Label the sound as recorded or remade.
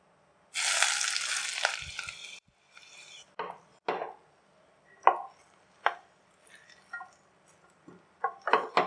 recorded